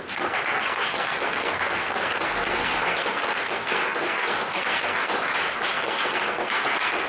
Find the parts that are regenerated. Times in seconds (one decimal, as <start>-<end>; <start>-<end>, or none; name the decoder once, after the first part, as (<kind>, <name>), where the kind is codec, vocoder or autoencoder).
0.0-5.1 (codec, SNAC); 5.7-7.1